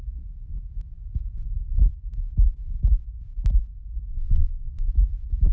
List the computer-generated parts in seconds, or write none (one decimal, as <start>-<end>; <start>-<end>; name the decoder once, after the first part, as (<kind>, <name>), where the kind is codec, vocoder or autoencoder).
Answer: 4.1-4.9 (vocoder, Vocos)